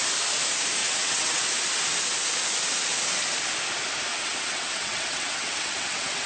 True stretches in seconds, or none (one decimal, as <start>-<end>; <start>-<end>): 0.0-0.8; 1.4-4.1